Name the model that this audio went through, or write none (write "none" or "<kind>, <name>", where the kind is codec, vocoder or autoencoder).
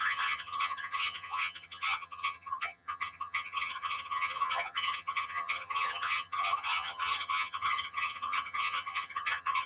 vocoder, HiFi-GAN